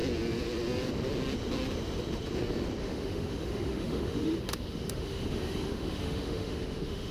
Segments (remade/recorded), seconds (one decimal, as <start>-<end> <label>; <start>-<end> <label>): 0.0-2.8 recorded; 2.8-7.1 remade